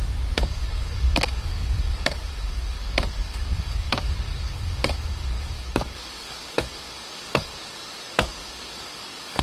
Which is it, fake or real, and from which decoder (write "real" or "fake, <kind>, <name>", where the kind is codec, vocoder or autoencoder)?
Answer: fake, codec, DAC